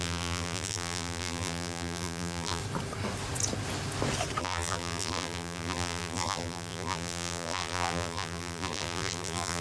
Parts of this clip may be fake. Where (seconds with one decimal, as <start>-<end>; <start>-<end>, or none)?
0.0-2.6; 4.4-9.6